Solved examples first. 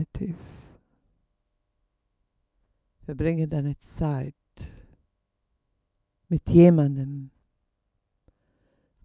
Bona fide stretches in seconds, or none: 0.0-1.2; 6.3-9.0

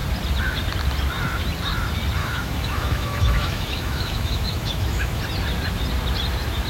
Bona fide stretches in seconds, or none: 0.0-2.2; 5.2-6.7